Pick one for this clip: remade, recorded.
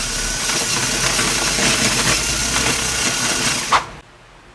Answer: recorded